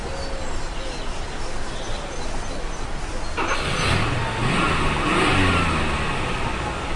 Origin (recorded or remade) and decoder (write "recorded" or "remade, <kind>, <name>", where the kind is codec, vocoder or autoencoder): recorded